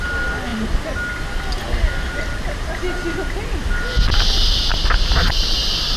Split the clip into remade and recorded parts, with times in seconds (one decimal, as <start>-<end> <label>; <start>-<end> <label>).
0.0-6.0 recorded